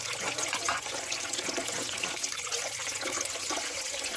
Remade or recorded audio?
remade